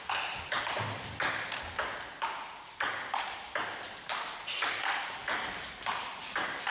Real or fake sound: real